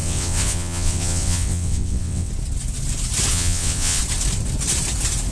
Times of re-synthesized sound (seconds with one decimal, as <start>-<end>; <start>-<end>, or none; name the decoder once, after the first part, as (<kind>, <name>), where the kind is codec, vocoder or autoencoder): 0.0-2.3 (vocoder, WaveNeXt); 3.3-4.0

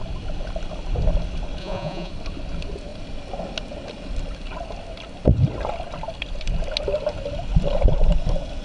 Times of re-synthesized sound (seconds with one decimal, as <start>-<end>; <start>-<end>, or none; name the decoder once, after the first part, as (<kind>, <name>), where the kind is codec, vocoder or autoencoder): 1.6-2.1 (vocoder, Vocos)

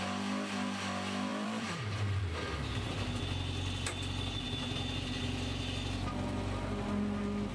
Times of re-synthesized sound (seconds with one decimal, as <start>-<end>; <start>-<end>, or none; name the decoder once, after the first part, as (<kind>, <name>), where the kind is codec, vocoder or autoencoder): 1.3-3.2 (vocoder, BigVGAN v2)